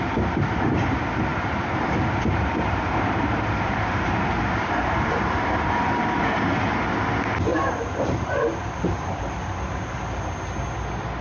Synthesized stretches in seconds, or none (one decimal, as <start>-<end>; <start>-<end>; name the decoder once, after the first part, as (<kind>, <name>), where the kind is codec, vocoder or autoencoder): 1.3-6.0 (vocoder, BigVGAN v2); 7.5-9.2